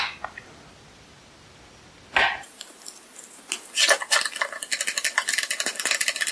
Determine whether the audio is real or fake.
real